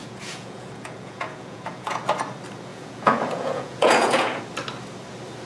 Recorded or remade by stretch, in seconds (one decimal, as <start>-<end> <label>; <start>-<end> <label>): 0.0-2.0 remade; 2.0-2.7 recorded; 2.7-4.4 remade; 4.4-5.5 recorded